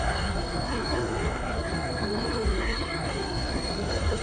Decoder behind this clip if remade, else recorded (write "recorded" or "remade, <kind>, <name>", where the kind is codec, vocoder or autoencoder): remade, codec, SNAC